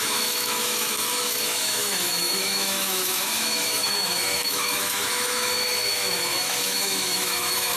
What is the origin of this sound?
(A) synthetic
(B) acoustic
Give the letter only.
A